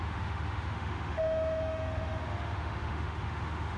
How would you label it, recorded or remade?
remade